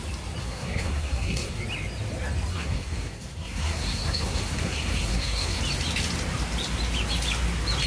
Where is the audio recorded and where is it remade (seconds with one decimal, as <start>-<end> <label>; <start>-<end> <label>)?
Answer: 0.0-0.4 recorded; 0.4-1.6 remade; 1.6-2.5 recorded; 2.5-5.6 remade; 5.6-7.9 recorded